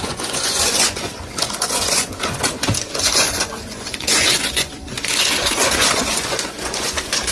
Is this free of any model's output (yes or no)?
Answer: no